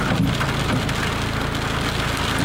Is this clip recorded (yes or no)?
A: yes